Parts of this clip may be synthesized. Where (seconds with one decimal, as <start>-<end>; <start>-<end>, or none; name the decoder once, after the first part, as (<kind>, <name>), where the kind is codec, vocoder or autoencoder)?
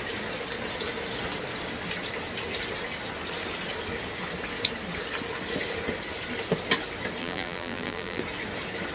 7.2-8.2 (vocoder, BigVGAN v2)